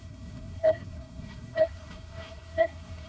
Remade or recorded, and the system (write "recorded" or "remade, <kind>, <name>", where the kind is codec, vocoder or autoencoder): remade, codec, SNAC